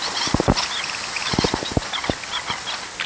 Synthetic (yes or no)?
no